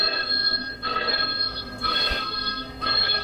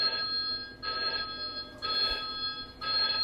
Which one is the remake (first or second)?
first